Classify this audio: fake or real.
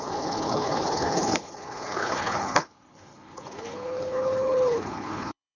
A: fake